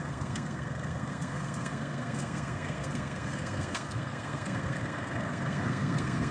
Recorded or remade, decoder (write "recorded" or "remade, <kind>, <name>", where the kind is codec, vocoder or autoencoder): remade, codec, SNAC